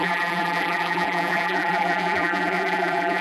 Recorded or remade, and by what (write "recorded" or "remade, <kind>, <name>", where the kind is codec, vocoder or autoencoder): remade, vocoder, BigVGAN v2